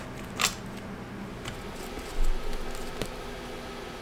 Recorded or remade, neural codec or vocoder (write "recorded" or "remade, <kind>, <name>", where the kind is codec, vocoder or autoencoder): recorded